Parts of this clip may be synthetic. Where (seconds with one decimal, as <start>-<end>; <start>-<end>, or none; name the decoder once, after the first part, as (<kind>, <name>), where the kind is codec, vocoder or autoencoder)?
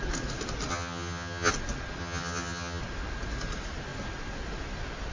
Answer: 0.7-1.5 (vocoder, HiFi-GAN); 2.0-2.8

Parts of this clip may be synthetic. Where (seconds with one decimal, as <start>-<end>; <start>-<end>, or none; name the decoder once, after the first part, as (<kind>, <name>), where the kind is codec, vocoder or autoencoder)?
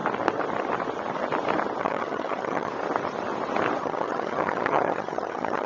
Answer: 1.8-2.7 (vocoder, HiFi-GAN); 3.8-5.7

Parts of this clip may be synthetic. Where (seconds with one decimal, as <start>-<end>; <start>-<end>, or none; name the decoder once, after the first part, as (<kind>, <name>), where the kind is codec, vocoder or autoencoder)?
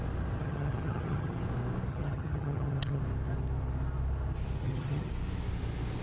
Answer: 0.4-1.4 (vocoder, HiFi-GAN); 1.9-3.0; 4.6-5.1